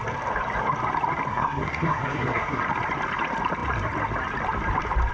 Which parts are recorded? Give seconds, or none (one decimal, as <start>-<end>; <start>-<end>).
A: 0.0-1.3; 2.6-5.1